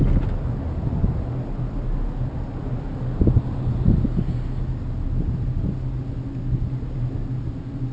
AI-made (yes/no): no